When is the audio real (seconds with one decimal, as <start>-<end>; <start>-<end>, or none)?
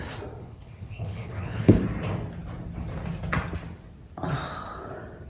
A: 0.0-0.4; 1.8-5.3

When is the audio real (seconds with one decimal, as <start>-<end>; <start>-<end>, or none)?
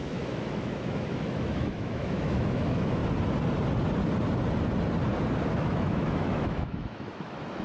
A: 3.0-5.5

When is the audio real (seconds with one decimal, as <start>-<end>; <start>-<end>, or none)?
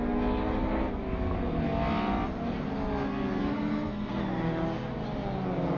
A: 0.0-3.4; 4.2-5.8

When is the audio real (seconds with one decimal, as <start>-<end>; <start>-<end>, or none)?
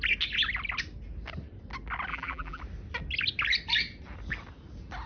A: 0.0-2.1; 2.6-5.1